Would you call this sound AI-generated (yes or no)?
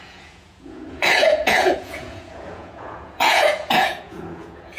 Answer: yes